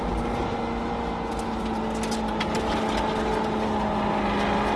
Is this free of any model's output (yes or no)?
yes